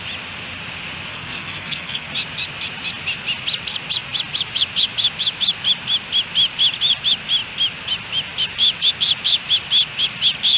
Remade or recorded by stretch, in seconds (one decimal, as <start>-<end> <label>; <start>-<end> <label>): 0.0-1.1 recorded; 1.1-2.1 remade; 2.1-10.6 recorded